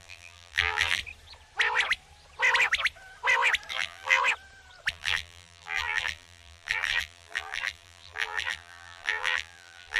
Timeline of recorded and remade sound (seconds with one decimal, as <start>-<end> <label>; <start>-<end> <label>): 0.0-1.0 remade; 1.0-3.7 recorded; 3.7-4.2 remade; 4.2-4.9 recorded; 4.9-10.0 remade